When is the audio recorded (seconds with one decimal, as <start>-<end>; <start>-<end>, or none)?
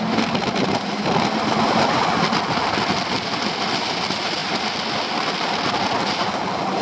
0.0-6.8